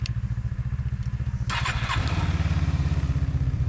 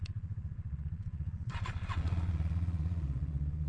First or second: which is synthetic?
second